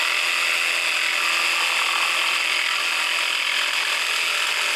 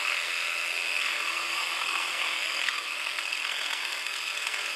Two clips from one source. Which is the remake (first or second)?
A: second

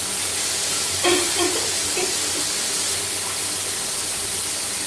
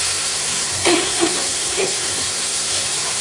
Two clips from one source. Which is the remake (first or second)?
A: second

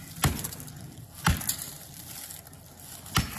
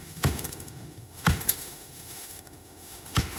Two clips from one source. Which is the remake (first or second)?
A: second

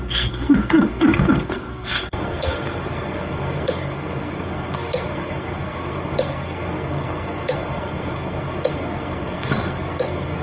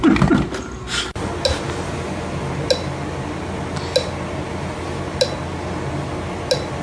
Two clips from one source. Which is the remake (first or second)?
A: first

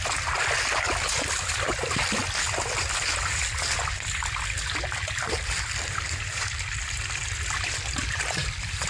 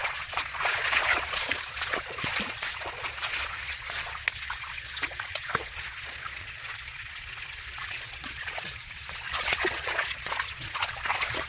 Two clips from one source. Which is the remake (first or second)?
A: second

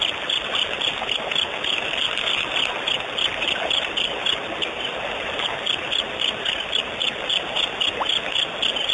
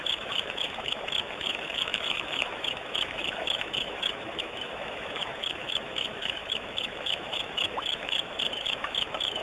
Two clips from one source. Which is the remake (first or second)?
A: second